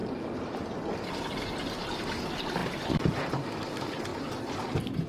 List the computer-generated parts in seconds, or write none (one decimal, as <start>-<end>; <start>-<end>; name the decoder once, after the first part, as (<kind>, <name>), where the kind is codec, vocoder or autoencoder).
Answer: 4.1-5.1 (vocoder, BigVGAN v2)